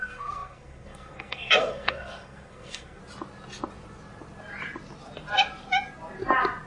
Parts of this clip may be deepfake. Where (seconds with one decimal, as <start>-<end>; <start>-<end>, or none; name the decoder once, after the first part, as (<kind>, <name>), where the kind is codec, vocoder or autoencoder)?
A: 0.0-3.0 (codec, SNAC)